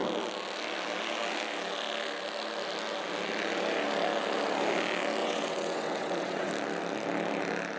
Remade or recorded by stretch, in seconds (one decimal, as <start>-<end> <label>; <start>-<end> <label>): 0.0-5.2 recorded; 5.2-6.5 remade; 6.5-7.8 recorded